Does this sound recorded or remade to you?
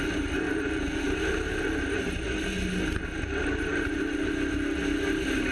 recorded